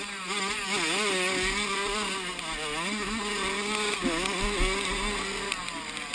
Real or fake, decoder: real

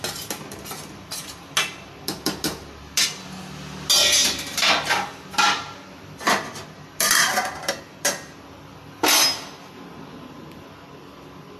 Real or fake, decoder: real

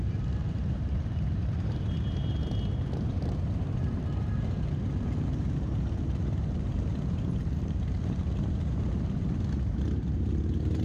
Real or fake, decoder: fake, vocoder, BigVGAN v2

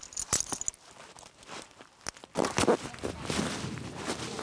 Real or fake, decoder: real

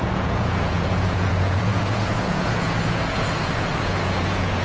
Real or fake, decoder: fake, vocoder, Vocos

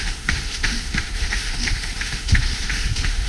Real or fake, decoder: fake, autoencoder, DAC-VAE